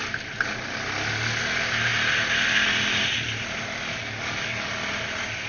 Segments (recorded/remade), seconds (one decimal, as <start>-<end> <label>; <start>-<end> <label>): 0.0-4.0 recorded; 4.0-4.7 remade; 4.7-5.5 recorded